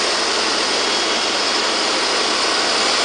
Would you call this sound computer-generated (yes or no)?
no